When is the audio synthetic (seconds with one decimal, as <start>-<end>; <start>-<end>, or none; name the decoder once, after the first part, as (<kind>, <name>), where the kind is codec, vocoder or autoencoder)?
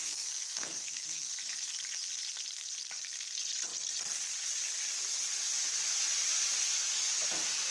0.0-1.3 (codec, SNAC)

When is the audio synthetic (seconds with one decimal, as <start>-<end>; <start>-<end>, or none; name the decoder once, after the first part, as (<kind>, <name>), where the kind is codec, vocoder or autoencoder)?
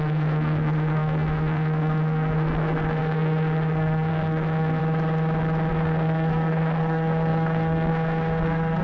0.0-4.8 (codec, SNAC); 5.7-8.8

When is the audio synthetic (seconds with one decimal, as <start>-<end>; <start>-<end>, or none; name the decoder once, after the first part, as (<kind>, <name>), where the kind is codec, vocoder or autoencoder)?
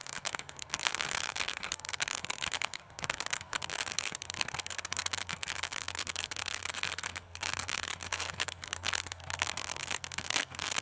0.0-10.8 (codec, SNAC)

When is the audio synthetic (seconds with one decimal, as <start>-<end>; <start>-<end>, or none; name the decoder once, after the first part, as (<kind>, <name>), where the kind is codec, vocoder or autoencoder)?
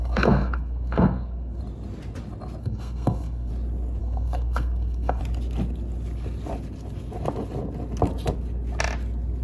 0.0-1.6 (codec, SNAC); 2.6-3.5; 4.0-5.2